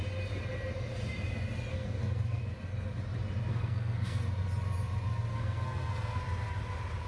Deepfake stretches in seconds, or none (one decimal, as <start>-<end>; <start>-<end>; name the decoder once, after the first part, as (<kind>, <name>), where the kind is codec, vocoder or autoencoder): 1.7-2.4 (codec, SNAC); 3.5-4.3; 5.3-6.2